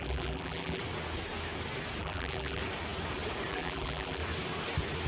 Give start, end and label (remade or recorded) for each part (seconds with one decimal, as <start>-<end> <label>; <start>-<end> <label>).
0.0-0.8 remade; 0.8-2.0 recorded; 2.0-2.6 remade; 2.6-3.5 recorded; 3.5-4.2 remade; 4.2-5.1 recorded